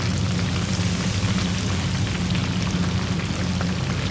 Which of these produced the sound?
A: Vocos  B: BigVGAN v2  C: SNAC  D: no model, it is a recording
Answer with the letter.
D